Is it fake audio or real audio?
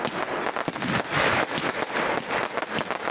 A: real